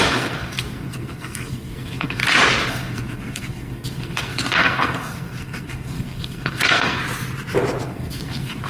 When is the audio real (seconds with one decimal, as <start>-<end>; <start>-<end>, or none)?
2.2-2.7; 7.0-7.8